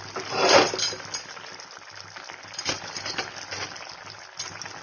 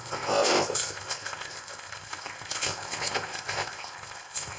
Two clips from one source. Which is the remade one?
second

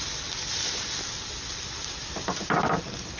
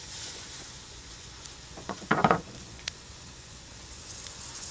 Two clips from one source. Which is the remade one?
second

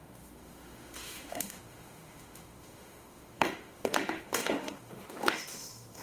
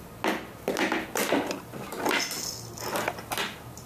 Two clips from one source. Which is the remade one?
first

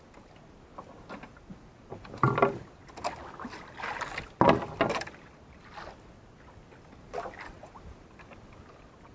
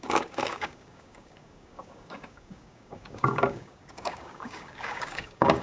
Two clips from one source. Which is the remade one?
second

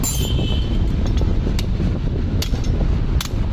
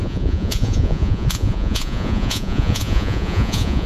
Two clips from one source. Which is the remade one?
second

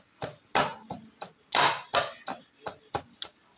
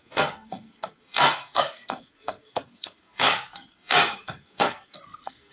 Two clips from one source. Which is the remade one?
second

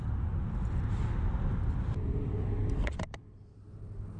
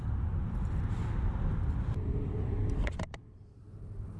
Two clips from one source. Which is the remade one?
second